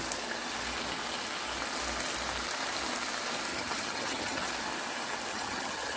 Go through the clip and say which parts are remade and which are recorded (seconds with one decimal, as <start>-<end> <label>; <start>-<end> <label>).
0.0-3.5 recorded; 3.5-4.5 remade; 4.5-5.3 recorded; 5.3-6.0 remade